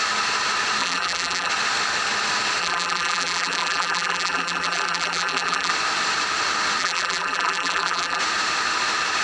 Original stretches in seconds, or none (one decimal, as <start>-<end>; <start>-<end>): 0.0-0.8; 1.5-2.6; 5.7-6.8; 8.2-9.2